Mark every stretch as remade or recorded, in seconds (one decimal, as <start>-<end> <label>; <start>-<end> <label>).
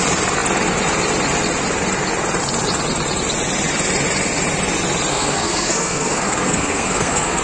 0.0-5.1 recorded; 5.1-7.4 remade